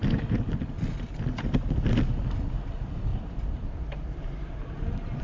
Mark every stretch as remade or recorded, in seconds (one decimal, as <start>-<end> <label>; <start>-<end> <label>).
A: 0.0-3.1 recorded; 3.1-5.2 remade